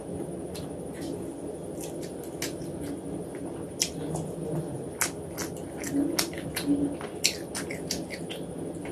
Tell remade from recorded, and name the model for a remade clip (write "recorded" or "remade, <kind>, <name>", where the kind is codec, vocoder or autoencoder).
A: recorded